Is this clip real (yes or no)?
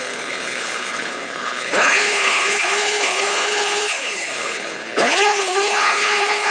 no